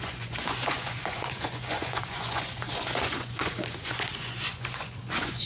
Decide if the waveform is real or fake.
fake